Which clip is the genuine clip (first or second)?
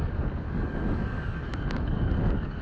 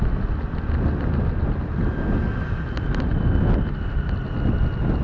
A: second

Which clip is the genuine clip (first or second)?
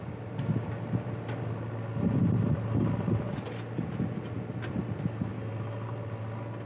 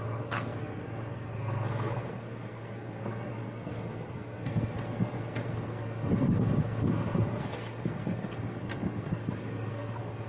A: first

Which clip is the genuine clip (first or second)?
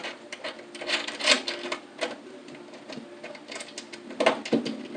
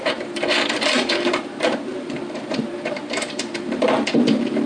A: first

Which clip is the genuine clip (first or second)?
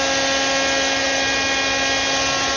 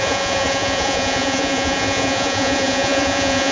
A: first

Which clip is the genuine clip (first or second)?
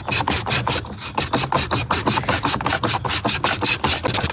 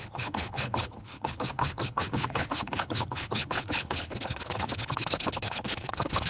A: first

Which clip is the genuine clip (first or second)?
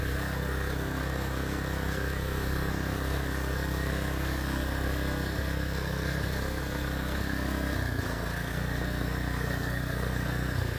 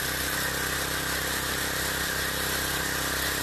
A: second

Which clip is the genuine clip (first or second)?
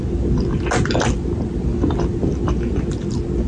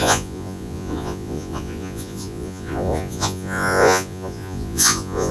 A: first